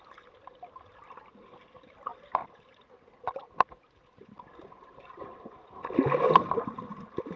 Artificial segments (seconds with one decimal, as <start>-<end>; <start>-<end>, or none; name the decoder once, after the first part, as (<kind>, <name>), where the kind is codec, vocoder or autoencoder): none